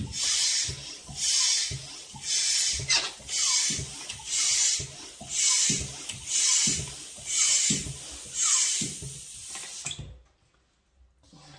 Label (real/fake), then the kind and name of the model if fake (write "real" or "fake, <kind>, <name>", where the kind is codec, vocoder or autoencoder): real